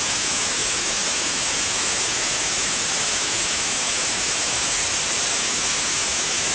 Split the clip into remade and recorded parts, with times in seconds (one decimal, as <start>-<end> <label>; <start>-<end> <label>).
0.0-4.8 remade; 4.8-5.3 recorded; 5.3-6.5 remade